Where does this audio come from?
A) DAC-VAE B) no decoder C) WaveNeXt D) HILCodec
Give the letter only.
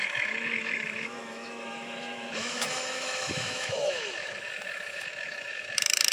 A